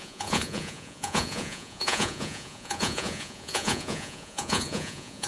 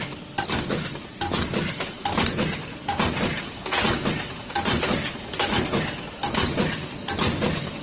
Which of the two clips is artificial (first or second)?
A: first